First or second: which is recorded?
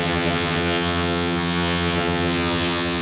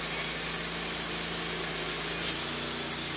second